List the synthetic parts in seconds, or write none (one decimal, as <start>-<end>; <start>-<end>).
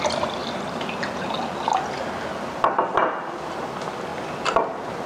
none